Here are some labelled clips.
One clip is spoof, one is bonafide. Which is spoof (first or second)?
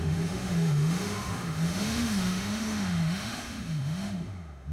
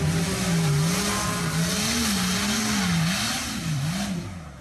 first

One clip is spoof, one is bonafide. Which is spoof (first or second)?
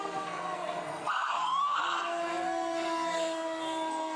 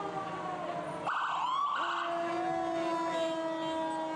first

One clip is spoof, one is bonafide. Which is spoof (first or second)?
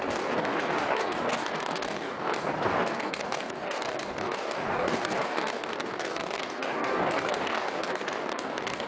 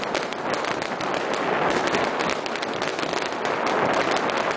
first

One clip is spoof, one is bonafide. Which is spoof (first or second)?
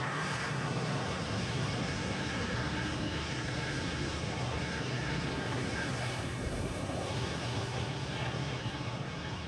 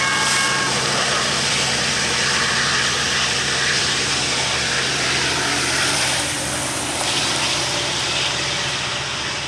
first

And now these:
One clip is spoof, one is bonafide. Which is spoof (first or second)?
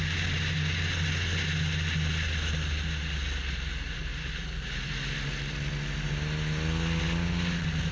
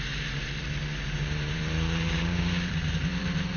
second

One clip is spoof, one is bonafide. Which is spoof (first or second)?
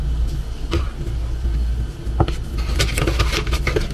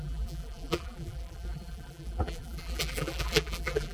second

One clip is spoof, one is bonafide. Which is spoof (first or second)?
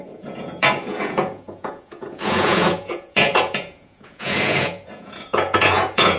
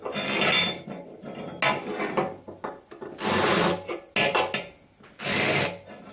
first